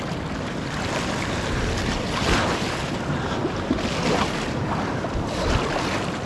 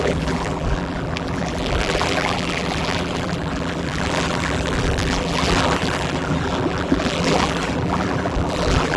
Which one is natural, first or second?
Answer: first